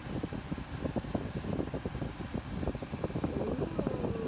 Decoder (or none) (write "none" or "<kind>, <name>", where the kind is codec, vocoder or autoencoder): none